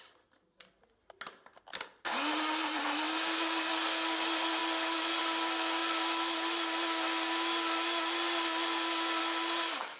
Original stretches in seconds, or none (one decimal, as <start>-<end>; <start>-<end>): 0.0-10.0

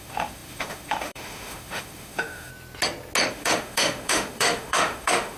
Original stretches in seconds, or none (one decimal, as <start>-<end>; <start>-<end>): 2.5-3.3

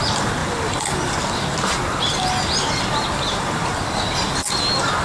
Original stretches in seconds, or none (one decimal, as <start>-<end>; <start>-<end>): 0.0-5.0

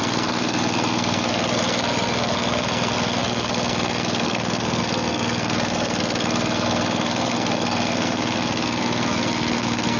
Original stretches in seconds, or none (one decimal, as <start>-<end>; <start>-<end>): none

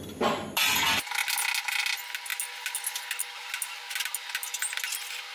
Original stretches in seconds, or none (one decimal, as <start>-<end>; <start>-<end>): 0.0-5.3

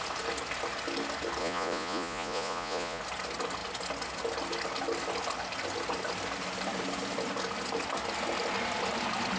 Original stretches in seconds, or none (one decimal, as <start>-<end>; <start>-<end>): 0.0-1.4; 3.0-9.4

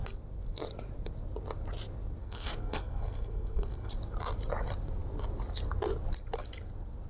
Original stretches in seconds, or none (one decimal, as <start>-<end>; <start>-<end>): 0.0-2.2; 3.9-7.1

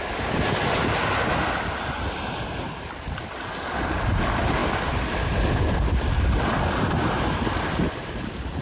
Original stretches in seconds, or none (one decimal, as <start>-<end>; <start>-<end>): 0.0-8.6